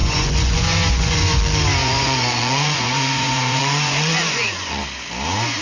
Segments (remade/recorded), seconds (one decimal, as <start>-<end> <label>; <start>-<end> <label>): 0.0-1.4 remade; 1.4-1.8 recorded; 1.8-4.8 remade; 4.8-5.6 recorded